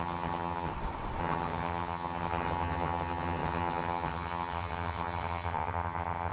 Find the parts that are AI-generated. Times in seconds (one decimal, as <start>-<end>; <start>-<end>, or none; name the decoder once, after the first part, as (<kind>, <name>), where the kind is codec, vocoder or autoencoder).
0.0-0.7 (vocoder, HiFi-GAN); 1.2-6.3